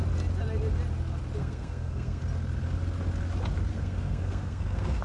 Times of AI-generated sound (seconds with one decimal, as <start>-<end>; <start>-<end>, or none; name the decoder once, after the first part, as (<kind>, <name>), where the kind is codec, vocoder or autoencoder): 1.4-2.2 (codec, SNAC); 3.7-5.0